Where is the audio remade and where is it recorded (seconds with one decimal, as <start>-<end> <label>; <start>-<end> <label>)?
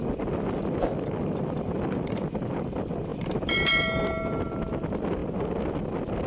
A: 0.0-3.1 recorded; 3.1-4.5 remade; 4.5-6.3 recorded